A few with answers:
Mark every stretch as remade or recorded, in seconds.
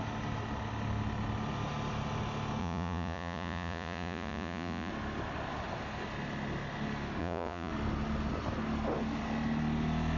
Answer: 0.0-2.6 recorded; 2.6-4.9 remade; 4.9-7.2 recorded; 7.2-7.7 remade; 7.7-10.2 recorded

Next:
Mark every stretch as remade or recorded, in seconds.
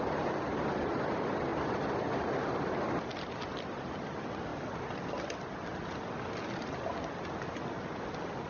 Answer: 0.0-1.5 recorded; 1.5-2.2 remade; 2.2-4.5 recorded; 4.5-5.1 remade; 5.1-8.5 recorded